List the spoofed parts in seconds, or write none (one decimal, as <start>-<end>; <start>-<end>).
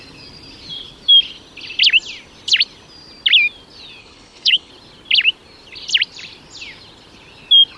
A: 4.0-4.7